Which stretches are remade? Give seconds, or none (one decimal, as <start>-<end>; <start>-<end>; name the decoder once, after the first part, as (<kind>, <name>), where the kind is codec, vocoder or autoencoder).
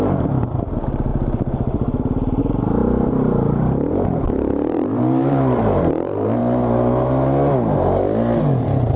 0.0-6.4 (vocoder, BigVGAN v2); 8.4-9.0